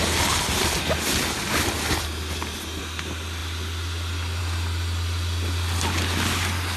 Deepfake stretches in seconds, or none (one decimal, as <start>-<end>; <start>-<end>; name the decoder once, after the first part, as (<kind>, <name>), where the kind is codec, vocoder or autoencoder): none